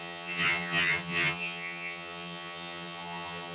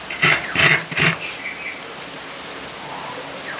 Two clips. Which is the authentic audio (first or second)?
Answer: second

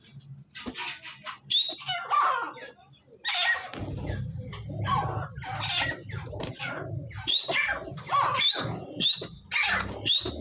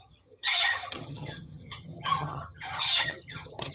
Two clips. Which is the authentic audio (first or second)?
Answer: first